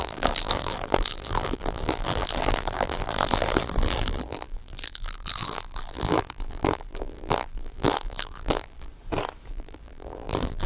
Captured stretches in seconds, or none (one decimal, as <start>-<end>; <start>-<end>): 8.9-9.5